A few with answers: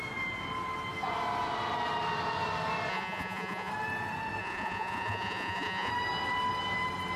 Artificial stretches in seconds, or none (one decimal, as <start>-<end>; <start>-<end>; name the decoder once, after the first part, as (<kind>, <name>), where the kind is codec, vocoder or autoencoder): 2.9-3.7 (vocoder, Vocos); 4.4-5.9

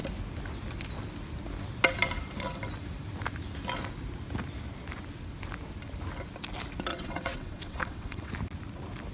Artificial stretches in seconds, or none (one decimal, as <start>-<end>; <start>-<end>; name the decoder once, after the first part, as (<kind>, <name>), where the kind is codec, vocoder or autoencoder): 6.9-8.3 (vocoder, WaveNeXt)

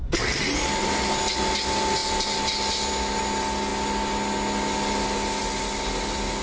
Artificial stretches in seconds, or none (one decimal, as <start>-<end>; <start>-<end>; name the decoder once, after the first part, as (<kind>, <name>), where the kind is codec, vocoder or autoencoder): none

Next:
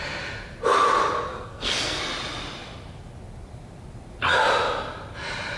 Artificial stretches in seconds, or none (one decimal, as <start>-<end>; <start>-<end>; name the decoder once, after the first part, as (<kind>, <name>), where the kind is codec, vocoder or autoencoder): 1.3-2.0 (codec, SNAC)

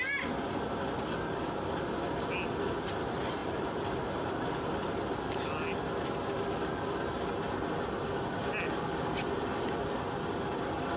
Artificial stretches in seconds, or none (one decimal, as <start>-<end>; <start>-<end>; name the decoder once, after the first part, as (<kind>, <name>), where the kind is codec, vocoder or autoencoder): 3.4-5.0 (vocoder, BigVGAN v2)

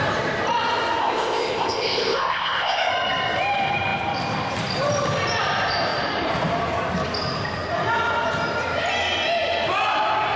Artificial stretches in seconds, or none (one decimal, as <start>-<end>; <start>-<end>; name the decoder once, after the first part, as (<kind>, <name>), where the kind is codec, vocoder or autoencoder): 1.0-2.9 (codec, ZipCodec)

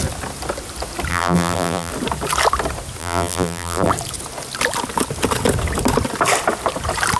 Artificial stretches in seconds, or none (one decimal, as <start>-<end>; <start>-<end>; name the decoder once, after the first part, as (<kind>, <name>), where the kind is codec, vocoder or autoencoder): 1.1-1.9 (vocoder, BigVGAN v2); 3.0-3.9

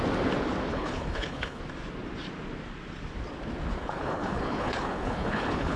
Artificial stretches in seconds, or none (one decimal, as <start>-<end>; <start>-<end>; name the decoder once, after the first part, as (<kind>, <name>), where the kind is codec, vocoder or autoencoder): 0.7-1.6 (codec, HILCodec); 3.8-5.8